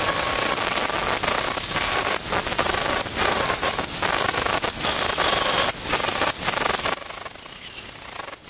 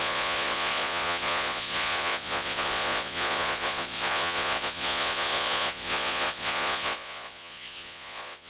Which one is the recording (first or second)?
first